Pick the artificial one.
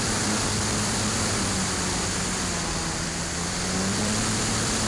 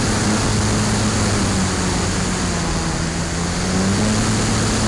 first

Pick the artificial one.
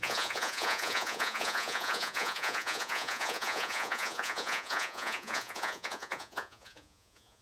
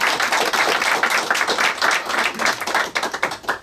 first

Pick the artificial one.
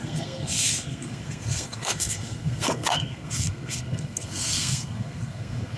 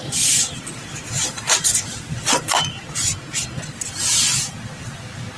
first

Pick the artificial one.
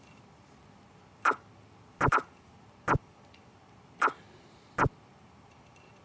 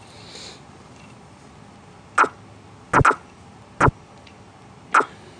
first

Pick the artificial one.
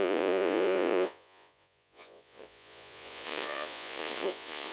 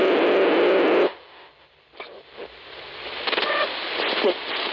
first